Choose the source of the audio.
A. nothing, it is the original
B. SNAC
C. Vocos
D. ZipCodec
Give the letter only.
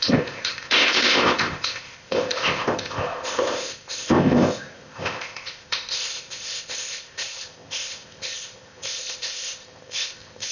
D